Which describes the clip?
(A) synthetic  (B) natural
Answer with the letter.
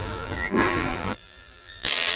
A